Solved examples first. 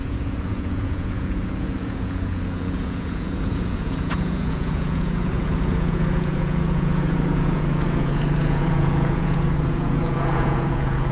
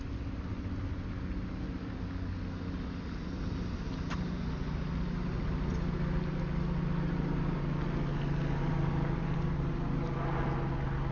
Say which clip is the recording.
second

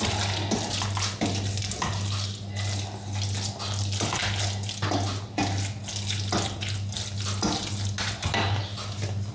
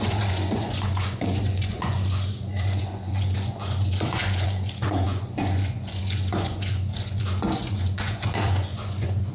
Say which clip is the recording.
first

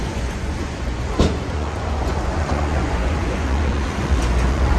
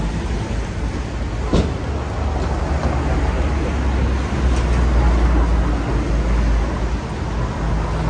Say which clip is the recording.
second